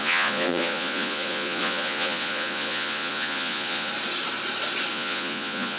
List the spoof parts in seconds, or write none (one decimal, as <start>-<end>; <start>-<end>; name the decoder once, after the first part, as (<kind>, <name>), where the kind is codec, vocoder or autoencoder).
0.0-3.9 (vocoder, Vocos); 4.9-5.8